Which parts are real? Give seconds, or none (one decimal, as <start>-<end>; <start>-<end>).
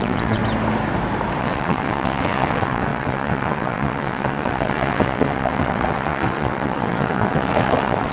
0.4-1.4